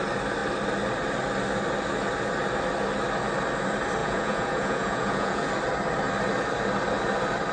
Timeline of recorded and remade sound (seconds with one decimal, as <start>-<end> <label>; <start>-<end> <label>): 0.0-4.0 recorded; 4.0-5.5 remade; 5.5-7.5 recorded